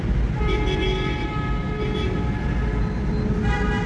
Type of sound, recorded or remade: recorded